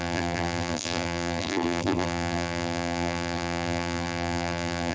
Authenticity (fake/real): fake